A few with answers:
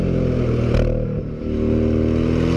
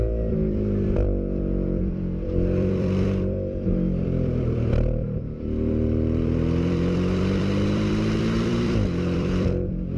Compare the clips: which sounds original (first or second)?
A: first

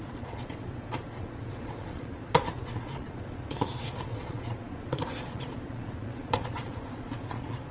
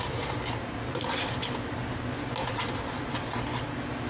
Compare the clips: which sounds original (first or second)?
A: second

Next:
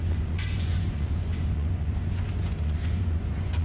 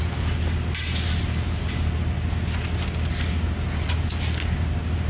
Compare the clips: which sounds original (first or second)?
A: second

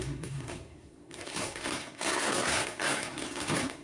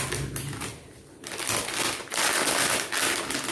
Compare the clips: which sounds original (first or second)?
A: second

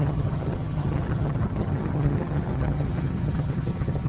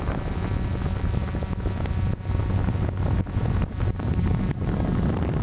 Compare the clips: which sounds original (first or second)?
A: second